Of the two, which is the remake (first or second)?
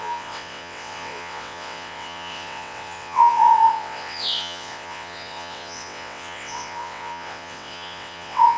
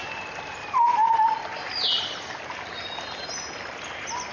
first